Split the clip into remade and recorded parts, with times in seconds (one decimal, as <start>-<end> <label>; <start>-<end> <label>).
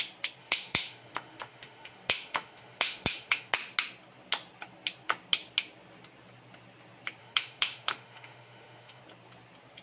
0.0-0.4 recorded; 0.4-3.5 remade; 3.5-7.2 recorded; 7.2-9.0 remade; 9.0-9.8 recorded